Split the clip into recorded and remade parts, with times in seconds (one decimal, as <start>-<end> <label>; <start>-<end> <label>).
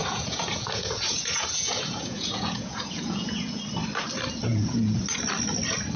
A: 0.0-3.6 remade; 3.6-4.5 recorded; 4.5-5.0 remade; 5.0-6.0 recorded